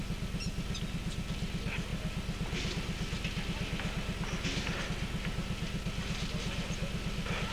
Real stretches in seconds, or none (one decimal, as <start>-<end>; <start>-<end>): 0.0-7.5